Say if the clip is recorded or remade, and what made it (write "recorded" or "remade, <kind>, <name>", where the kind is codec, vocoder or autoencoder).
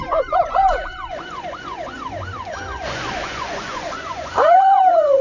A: remade, vocoder, Vocos